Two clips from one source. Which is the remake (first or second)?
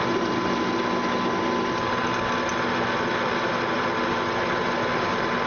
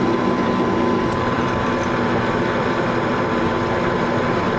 second